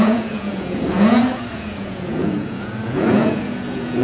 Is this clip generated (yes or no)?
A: yes